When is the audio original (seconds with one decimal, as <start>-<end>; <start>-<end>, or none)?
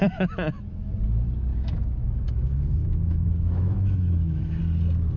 0.9-1.5; 4.6-5.2